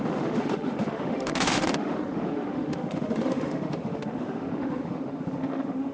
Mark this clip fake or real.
fake